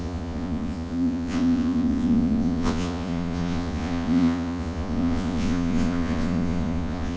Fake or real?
fake